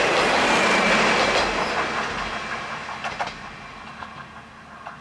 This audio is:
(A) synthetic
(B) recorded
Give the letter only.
B